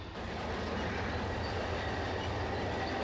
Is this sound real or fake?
real